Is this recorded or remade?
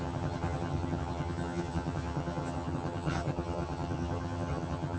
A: remade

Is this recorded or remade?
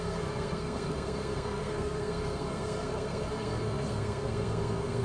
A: remade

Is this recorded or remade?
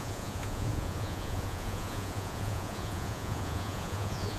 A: remade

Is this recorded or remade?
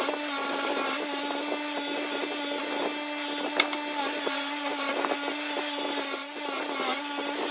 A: recorded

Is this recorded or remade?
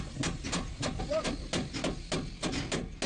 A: recorded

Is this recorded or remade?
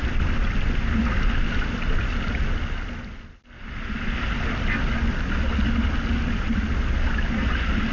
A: recorded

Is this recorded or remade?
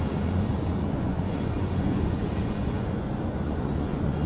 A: remade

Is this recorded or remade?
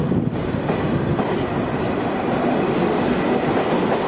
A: recorded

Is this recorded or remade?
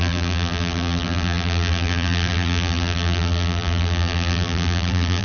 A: remade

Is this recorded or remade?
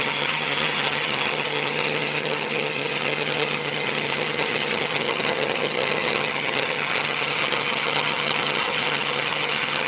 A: remade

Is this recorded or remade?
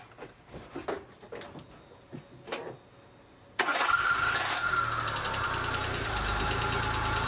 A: recorded